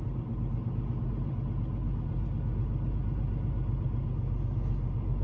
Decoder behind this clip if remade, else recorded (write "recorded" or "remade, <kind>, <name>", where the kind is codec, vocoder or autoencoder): recorded